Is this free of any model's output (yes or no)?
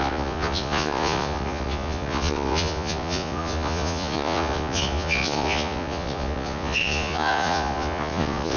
no